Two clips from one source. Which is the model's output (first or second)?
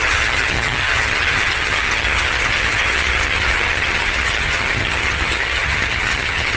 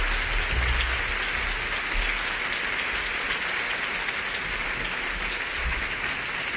first